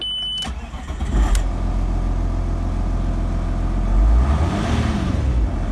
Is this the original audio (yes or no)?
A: yes